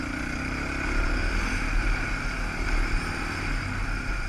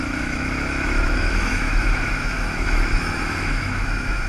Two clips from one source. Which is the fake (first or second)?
second